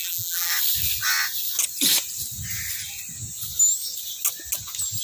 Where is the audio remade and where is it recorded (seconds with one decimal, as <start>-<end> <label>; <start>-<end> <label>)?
0.0-0.5 remade; 0.5-5.0 recorded